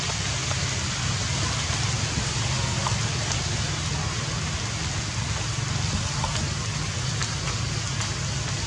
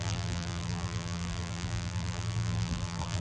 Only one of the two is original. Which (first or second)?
first